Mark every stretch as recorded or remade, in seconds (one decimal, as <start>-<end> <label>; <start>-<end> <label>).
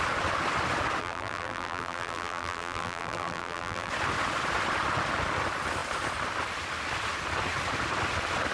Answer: 0.0-1.0 recorded; 1.0-3.9 remade; 3.9-8.5 recorded